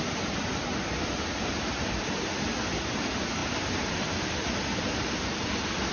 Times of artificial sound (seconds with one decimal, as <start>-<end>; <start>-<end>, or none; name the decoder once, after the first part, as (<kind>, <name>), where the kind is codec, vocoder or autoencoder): none